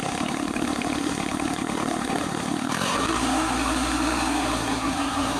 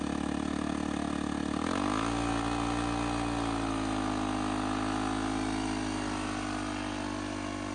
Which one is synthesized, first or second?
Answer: first